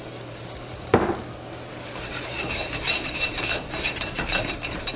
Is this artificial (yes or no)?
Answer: yes